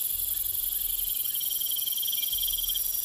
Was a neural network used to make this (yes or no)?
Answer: no